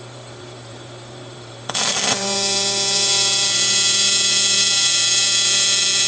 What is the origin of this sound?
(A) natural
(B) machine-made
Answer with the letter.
B